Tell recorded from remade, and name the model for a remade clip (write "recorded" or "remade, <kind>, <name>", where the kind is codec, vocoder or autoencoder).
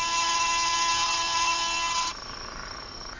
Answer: recorded